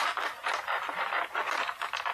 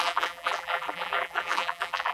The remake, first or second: second